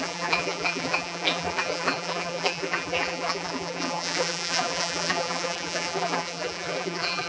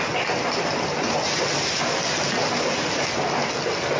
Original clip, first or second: second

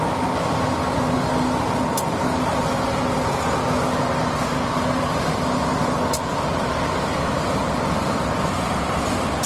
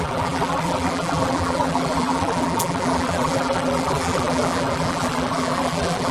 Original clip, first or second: first